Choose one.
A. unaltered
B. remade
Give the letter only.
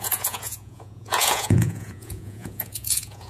B